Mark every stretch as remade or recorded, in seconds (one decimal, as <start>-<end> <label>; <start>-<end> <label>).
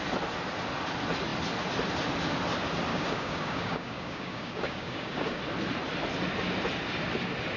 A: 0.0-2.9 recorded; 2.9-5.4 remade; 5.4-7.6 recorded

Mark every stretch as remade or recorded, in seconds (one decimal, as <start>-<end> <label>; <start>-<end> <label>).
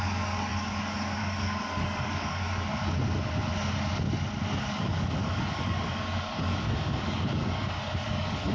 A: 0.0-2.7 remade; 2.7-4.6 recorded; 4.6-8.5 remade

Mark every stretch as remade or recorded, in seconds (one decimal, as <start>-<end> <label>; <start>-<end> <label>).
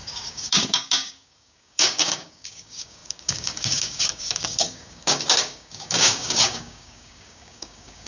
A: 0.0-8.1 remade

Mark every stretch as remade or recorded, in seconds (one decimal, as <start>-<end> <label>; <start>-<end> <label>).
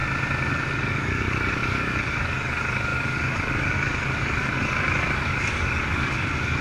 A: 0.0-0.5 recorded; 0.5-6.6 remade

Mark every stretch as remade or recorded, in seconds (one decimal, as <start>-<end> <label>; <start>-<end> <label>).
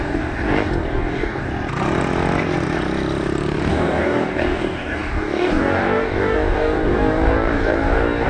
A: 0.0-1.5 remade; 1.5-3.7 recorded; 3.7-8.3 remade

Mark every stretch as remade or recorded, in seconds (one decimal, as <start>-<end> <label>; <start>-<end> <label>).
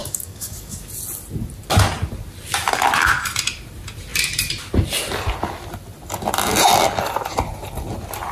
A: 0.0-0.9 remade; 0.9-8.3 recorded